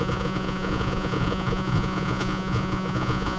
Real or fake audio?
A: fake